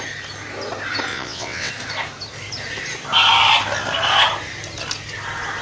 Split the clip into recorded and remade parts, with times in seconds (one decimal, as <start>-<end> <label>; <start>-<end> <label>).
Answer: 0.0-1.1 recorded; 1.1-1.7 remade; 1.7-5.6 recorded